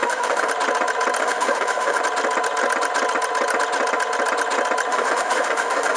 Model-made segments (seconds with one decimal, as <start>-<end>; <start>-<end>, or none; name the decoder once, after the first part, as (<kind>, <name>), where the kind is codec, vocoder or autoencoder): 0.0-0.5 (autoencoder, DAC-VAE); 1.2-2.0; 4.9-6.0